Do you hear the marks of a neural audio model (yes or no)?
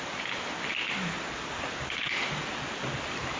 no